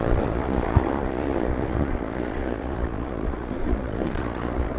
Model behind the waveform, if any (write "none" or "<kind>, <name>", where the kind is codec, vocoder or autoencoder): vocoder, Vocos